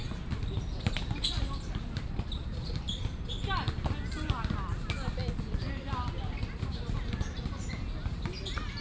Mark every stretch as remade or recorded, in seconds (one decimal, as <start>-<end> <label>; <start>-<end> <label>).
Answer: 0.0-8.8 recorded